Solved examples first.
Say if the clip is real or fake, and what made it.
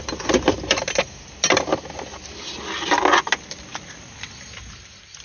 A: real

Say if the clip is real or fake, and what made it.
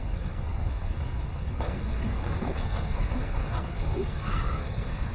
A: fake, codec, SNAC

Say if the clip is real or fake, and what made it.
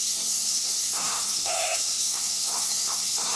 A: fake, codec, SNAC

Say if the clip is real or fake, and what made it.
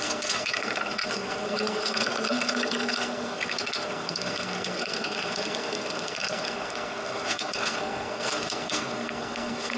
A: fake, codec, SNAC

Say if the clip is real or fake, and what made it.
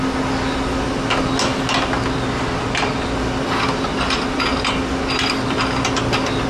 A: real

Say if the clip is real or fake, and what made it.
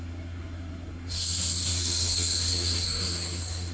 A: fake, codec, SNAC